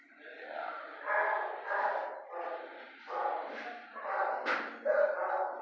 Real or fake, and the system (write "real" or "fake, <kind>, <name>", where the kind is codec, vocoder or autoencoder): real